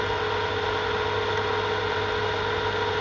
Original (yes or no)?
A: yes